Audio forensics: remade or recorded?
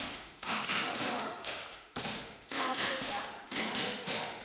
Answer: remade